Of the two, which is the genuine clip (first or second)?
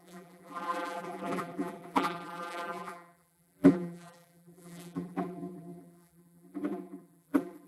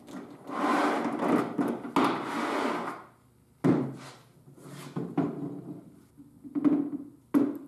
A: second